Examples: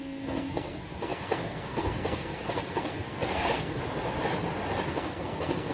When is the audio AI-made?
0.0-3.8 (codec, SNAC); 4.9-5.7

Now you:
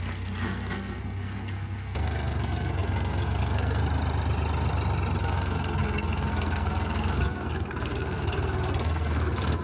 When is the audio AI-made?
0.0-3.8 (codec, SNAC); 5.2-9.6

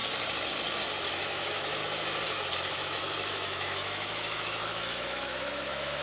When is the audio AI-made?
1.1-1.8 (autoencoder, DAC-VAE); 2.7-6.0

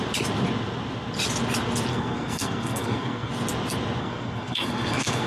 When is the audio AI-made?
1.9-3.3 (codec, SNAC); 4.0-5.3

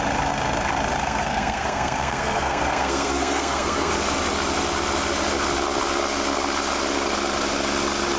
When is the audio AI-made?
1.0-3.9 (codec, SNAC)

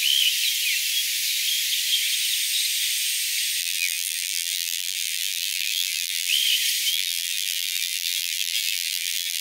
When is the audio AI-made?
3.6-6.3 (vocoder, BigVGAN v2); 6.9-9.4